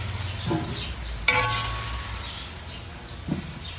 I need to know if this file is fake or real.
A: real